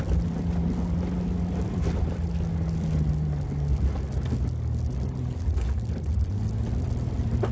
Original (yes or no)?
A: yes